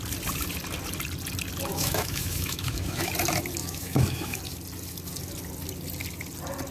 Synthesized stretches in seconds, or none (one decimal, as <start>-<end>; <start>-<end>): 1.7-3.1; 3.6-4.4